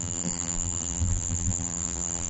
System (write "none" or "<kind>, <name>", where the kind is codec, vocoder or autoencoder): vocoder, BigVGAN v2